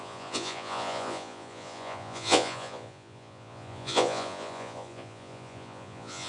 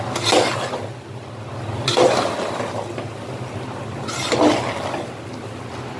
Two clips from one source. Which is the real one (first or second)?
second